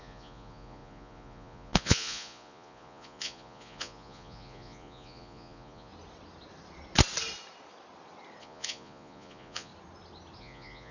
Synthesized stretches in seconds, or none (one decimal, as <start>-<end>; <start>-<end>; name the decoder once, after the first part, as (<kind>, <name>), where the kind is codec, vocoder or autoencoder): 0.0-5.9 (vocoder, Vocos); 8.4-9.7; 10.4-10.9